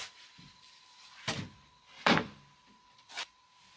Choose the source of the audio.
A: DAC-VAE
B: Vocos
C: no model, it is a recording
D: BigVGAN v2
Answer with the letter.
C